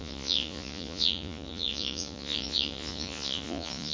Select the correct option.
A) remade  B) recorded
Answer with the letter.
A